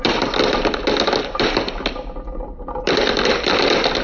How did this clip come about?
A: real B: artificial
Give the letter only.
A